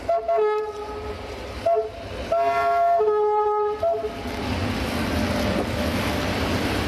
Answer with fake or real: real